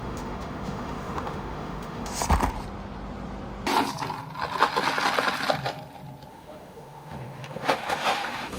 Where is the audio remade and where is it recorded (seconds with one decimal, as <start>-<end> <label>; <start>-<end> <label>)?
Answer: 0.0-2.2 remade; 2.2-6.3 recorded; 6.3-8.6 remade